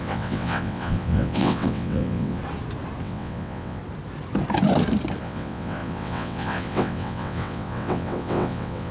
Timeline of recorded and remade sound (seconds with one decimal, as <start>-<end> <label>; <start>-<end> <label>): 0.0-2.4 remade; 2.4-3.0 recorded; 3.0-3.8 remade; 3.8-5.2 recorded; 5.2-8.9 remade